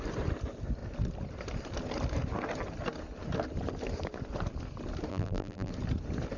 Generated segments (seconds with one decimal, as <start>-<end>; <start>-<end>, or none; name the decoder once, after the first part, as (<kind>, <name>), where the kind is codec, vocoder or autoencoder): 5.1-5.7 (vocoder, BigVGAN v2)